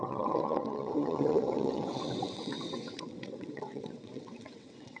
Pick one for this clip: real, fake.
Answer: fake